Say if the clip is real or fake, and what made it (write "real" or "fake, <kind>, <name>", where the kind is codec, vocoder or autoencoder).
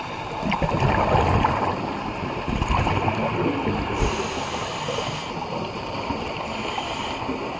real